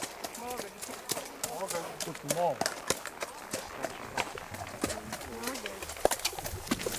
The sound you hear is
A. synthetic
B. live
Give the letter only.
B